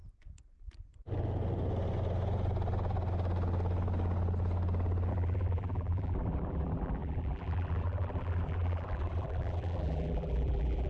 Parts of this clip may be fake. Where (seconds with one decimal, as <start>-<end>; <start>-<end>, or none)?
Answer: 5.1-10.9